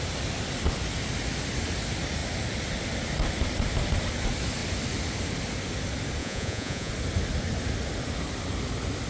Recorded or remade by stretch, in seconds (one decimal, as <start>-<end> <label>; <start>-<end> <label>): 0.0-6.2 recorded; 6.2-6.9 remade; 6.9-9.1 recorded